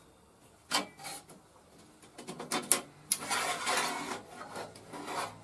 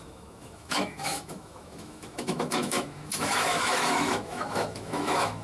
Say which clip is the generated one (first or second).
second